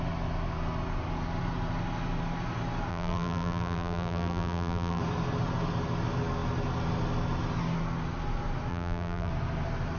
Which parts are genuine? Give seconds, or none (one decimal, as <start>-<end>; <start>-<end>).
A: 0.0-2.9; 5.0-8.7; 9.3-10.0